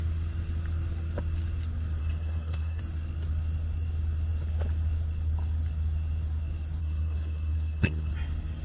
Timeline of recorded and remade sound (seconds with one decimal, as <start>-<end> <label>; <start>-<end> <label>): 0.0-2.0 recorded; 2.0-2.8 remade; 2.8-6.8 recorded; 6.8-8.1 remade; 8.1-8.6 recorded